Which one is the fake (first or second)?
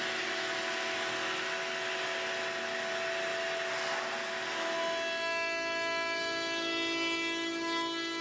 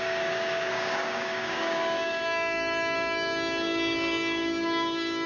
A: second